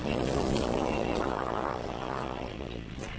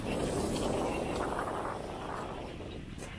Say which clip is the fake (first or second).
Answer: first